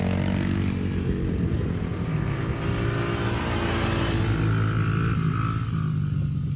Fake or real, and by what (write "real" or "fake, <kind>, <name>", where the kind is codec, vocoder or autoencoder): real